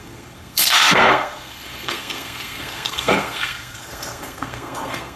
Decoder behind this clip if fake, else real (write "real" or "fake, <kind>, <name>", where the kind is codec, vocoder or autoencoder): fake, codec, SNAC